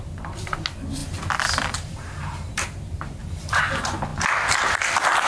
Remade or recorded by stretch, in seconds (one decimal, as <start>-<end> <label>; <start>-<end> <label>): 0.0-1.0 recorded; 1.0-3.6 remade; 3.6-5.3 recorded

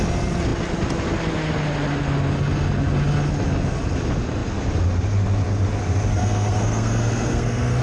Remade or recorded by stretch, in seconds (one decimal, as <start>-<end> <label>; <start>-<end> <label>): 0.0-6.1 recorded; 6.1-7.8 remade

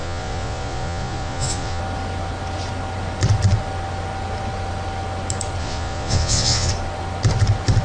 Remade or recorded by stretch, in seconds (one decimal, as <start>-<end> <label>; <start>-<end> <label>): 0.0-1.8 remade; 1.8-5.6 recorded; 5.6-6.7 remade; 6.7-7.8 recorded

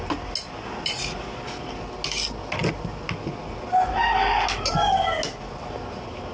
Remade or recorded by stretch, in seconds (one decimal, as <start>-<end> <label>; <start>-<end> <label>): 0.0-6.3 recorded

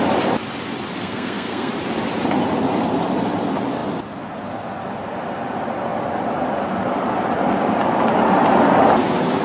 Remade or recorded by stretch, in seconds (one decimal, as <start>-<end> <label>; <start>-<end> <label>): 0.0-1.0 recorded; 1.0-1.7 remade; 1.7-9.4 recorded